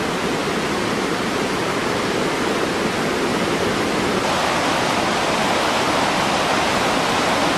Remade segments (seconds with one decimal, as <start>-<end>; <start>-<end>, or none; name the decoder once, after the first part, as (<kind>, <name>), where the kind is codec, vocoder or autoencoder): 1.8-2.7 (vocoder, BigVGAN v2); 3.3-6.4